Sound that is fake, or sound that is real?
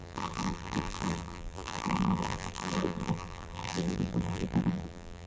fake